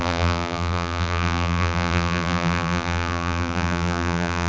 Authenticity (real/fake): fake